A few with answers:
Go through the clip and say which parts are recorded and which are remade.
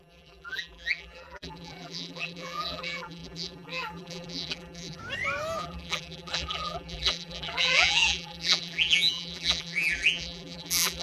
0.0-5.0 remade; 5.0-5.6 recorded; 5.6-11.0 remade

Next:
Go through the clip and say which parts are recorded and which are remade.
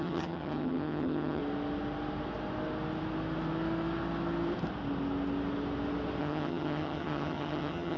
0.0-1.4 remade; 1.4-6.2 recorded; 6.2-8.0 remade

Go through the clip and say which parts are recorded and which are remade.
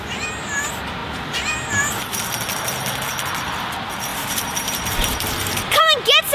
0.0-4.1 recorded; 4.1-5.8 remade; 5.8-6.3 recorded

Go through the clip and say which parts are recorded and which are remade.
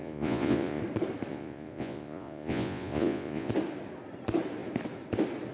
0.0-0.8 remade; 0.8-1.3 recorded; 1.3-3.5 remade; 3.5-5.5 recorded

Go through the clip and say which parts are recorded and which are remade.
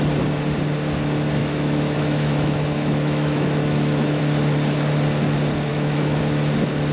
0.0-1.4 recorded; 1.4-4.2 remade; 4.2-5.7 recorded; 5.7-6.2 remade; 6.2-6.9 recorded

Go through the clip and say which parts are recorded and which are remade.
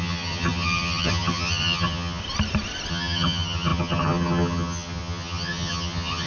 0.0-2.2 remade; 2.2-2.9 recorded; 2.9-6.3 remade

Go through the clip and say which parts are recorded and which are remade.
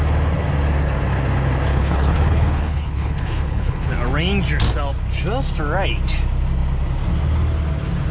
0.0-1.7 recorded; 1.7-3.9 remade; 3.9-8.1 recorded